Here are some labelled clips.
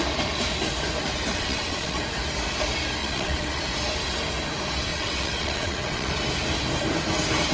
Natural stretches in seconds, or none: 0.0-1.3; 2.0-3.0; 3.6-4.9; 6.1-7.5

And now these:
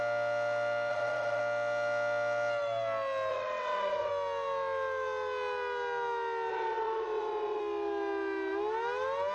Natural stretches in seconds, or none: 0.0-0.9; 1.4-3.3; 4.1-6.5; 7.6-9.3

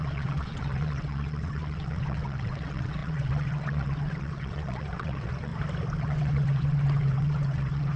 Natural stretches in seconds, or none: 5.5-6.0

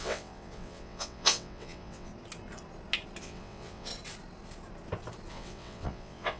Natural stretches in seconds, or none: 2.1-3.2; 3.9-5.3

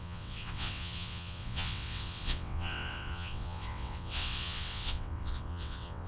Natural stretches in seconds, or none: none

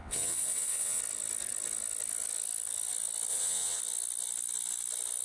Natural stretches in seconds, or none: 1.0-3.3; 3.8-5.2

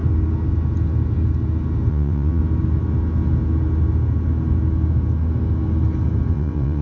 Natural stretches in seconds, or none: 0.0-1.9; 2.4-6.3

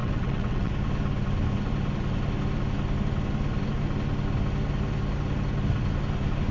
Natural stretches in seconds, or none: 0.7-6.5